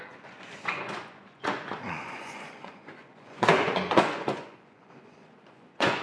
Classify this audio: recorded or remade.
remade